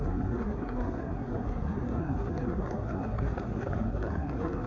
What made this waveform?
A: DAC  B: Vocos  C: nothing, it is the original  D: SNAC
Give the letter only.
D